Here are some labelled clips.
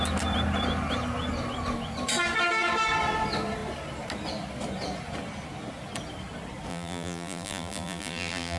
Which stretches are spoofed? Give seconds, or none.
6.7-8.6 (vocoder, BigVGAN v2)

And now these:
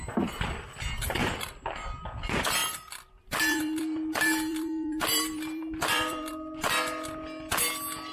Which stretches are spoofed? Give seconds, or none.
1.2-2.1 (vocoder, BigVGAN v2); 2.6-6.3

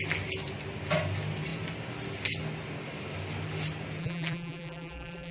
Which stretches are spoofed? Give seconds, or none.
4.0-5.3 (vocoder, BigVGAN v2)

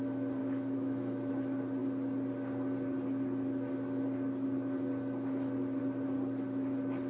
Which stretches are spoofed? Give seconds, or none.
0.4-1.3 (autoencoder, DAC-VAE)

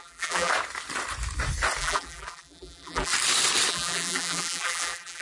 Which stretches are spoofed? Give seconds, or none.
0.0-0.5 (vocoder, BigVGAN v2); 1.8-3.1; 3.7-5.2

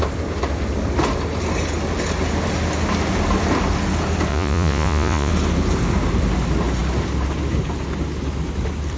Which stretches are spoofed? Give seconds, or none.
4.3-5.3 (vocoder, Vocos)

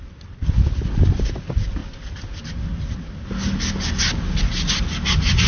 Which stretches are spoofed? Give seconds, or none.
none

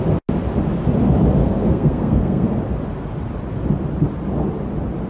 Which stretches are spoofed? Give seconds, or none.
1.4-2.6 (codec, SNAC)